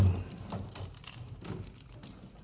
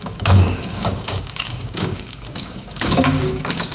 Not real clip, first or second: second